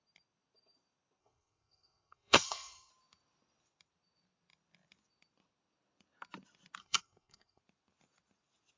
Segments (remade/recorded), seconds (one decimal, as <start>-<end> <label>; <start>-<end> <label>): 0.0-1.2 recorded; 1.2-2.9 remade; 2.9-6.8 recorded; 6.8-7.6 remade; 7.6-8.8 recorded